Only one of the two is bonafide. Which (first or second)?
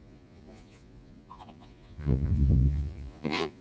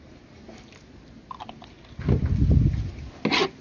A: second